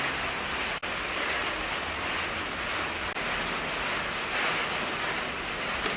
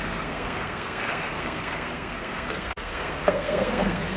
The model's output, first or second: second